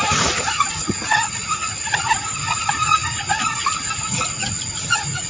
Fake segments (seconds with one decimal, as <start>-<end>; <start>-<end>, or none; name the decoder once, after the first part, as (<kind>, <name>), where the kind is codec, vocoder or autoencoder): 0.0-5.3 (vocoder, Vocos)